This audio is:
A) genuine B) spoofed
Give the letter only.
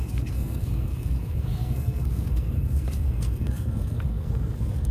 B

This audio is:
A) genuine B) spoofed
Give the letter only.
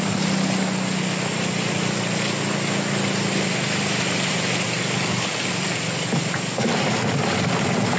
A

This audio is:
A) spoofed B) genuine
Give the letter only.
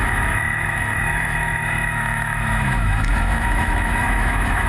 A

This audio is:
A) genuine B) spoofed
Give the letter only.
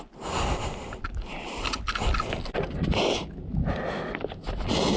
A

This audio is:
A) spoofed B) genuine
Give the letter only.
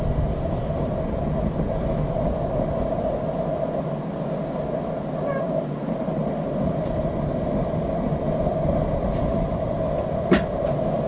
B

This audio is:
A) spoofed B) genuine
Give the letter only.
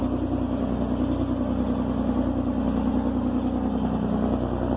B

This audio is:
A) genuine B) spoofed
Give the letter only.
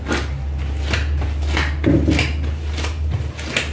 B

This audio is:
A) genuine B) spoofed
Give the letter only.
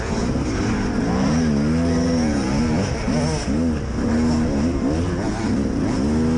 A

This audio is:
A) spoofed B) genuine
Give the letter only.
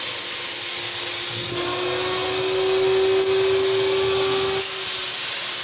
B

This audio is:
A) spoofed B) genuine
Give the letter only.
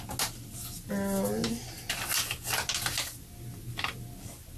B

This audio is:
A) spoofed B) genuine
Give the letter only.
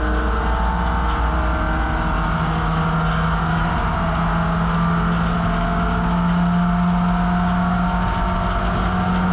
B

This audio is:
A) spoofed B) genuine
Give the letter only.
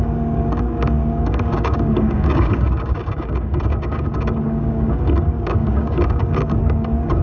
A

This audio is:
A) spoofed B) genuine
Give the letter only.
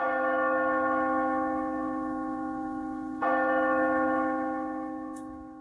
A